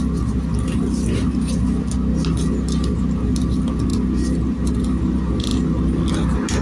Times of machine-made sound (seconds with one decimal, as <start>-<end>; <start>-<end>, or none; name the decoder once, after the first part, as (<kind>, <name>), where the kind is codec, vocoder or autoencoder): none